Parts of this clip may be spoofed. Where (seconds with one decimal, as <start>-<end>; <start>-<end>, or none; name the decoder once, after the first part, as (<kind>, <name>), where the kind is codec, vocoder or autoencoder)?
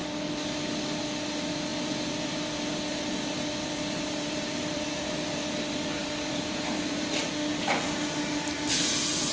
1.7-5.6 (vocoder, BigVGAN v2); 6.0-7.3